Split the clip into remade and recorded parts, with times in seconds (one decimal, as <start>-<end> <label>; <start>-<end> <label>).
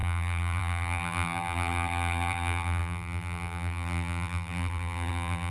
0.0-5.5 remade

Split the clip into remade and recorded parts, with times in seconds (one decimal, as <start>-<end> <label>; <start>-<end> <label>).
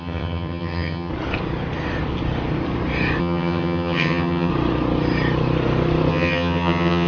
0.0-1.1 remade; 1.1-3.2 recorded; 3.2-4.5 remade; 4.5-6.1 recorded; 6.1-7.1 remade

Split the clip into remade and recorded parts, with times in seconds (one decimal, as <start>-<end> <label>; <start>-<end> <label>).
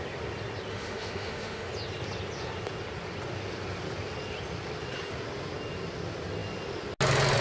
0.0-0.7 recorded; 0.7-1.7 remade; 1.7-7.4 recorded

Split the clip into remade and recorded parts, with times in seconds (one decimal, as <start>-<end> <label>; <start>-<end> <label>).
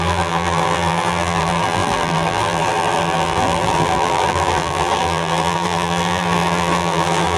0.0-7.4 remade